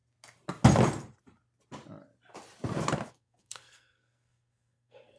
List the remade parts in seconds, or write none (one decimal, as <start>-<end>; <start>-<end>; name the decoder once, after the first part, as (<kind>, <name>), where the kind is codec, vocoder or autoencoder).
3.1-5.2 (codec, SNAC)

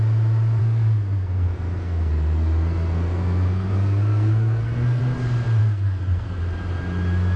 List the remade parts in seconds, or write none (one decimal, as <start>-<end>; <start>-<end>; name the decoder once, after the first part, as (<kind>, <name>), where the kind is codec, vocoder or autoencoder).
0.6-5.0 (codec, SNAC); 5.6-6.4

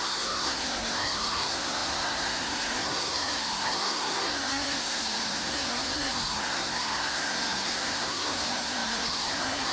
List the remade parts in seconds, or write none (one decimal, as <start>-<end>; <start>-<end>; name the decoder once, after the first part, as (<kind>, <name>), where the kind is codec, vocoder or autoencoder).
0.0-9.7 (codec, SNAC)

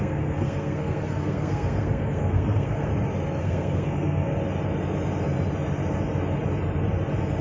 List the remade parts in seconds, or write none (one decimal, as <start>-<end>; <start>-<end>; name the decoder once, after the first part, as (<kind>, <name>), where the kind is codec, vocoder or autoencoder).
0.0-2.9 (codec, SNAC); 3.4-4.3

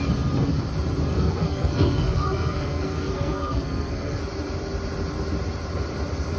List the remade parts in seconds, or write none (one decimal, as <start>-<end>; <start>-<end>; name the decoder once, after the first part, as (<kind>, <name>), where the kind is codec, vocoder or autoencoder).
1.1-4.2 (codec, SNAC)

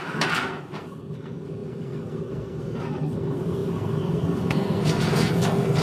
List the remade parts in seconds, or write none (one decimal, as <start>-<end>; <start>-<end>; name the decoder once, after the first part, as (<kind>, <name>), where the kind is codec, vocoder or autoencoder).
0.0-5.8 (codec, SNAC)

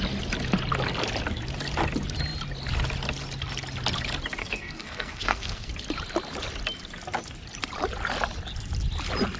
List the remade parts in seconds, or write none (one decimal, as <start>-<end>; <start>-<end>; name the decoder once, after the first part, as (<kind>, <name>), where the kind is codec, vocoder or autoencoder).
4.4-5.7 (codec, SNAC)